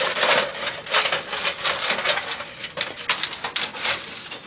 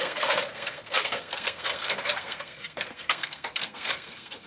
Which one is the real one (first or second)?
first